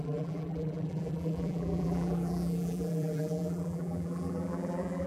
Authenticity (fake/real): fake